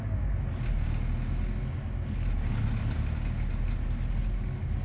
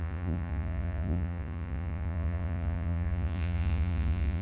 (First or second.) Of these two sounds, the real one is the first